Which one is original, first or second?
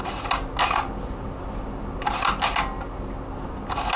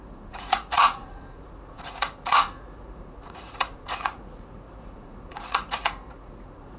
first